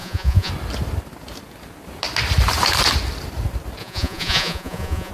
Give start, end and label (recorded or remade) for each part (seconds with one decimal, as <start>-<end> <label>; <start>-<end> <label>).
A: 0.0-0.5 remade; 0.5-3.8 recorded; 3.8-5.1 remade